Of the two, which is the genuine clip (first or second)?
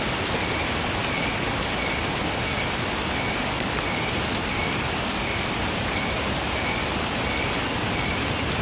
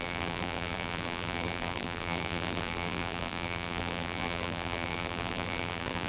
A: first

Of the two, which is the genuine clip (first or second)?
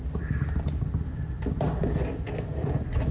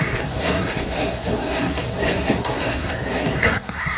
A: first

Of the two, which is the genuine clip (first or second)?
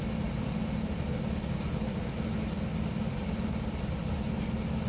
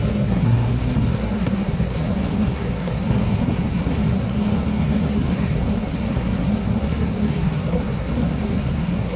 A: first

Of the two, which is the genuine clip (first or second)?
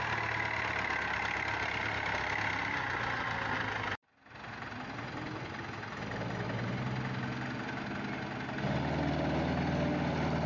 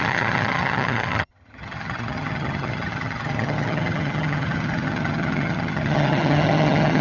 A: first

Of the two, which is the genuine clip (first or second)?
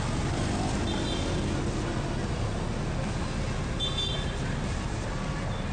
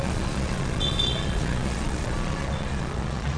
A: first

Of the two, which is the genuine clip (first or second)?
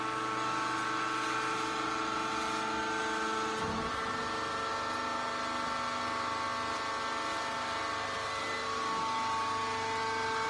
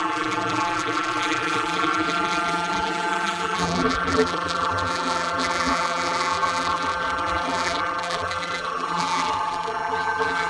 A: first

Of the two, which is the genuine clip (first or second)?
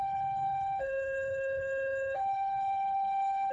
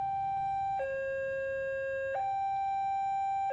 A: second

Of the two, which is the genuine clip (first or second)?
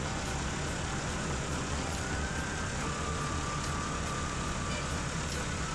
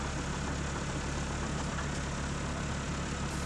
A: second